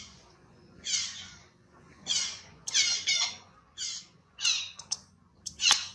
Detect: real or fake fake